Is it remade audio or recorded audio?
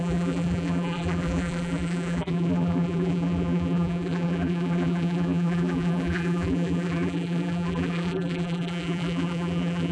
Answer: remade